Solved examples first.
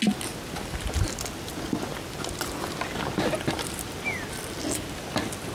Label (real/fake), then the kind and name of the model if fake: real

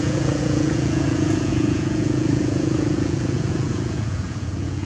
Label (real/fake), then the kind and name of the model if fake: fake, vocoder, Vocos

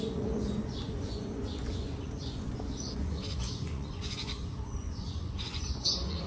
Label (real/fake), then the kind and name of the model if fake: fake, vocoder, Vocos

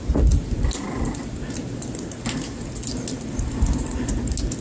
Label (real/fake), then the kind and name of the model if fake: real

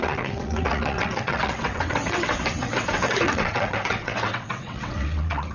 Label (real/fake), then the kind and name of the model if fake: fake, vocoder, WaveNeXt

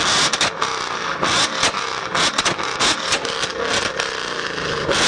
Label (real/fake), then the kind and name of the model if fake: real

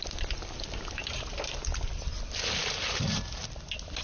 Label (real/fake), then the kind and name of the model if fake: real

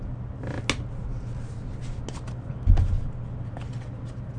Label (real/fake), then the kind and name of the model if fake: real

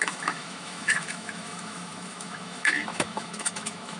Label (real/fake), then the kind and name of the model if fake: fake, autoencoder, DAC-VAE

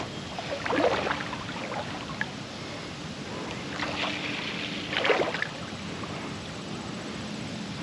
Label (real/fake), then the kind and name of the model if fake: real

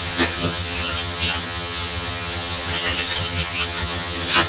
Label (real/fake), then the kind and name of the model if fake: fake, vocoder, HiFi-GAN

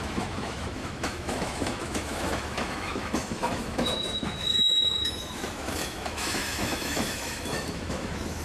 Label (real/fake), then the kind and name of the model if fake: fake, autoencoder, DAC-VAE